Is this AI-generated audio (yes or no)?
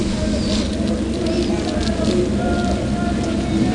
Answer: no